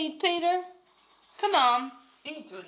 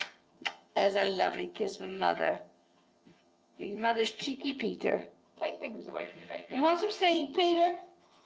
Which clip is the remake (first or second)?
second